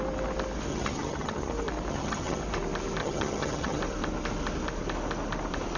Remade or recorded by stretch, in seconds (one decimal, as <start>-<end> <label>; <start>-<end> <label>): 0.0-0.7 recorded; 0.7-1.5 remade; 1.5-1.9 recorded; 1.9-2.4 remade; 2.4-3.0 recorded; 3.0-3.8 remade; 3.8-5.8 recorded